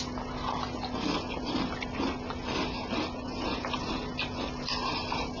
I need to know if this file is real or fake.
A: real